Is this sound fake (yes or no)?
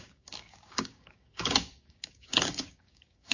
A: yes